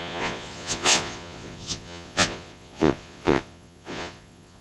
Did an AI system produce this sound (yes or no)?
yes